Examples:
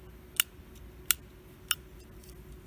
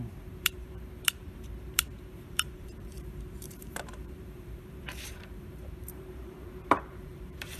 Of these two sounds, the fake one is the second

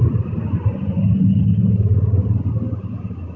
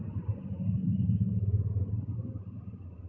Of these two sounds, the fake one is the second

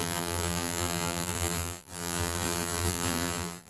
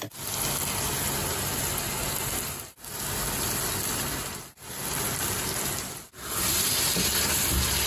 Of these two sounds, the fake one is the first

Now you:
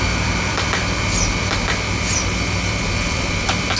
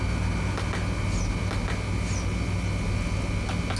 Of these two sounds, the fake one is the first